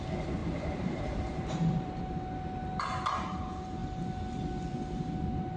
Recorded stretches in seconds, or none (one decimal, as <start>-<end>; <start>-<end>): 0.0-0.4; 2.0-5.6